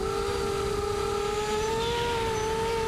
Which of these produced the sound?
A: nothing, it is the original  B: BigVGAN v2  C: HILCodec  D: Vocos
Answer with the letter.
A